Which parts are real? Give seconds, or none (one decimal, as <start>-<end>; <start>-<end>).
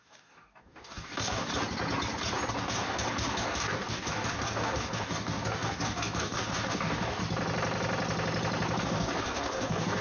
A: 1.5-2.5; 7.2-8.8